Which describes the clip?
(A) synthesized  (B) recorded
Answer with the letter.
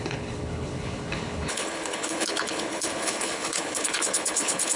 A